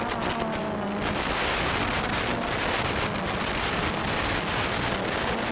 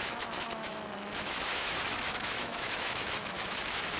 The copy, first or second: second